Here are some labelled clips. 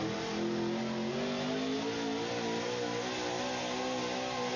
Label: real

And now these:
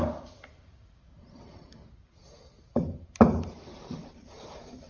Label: fake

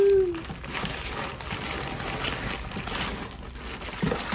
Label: real